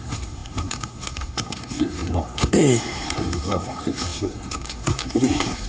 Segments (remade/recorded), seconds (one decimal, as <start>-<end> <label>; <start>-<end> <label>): 0.0-5.7 remade